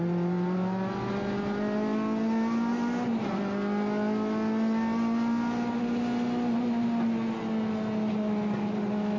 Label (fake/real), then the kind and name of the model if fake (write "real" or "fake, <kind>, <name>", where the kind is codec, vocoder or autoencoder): real